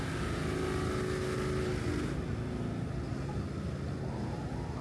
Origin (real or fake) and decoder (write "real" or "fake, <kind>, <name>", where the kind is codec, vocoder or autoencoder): real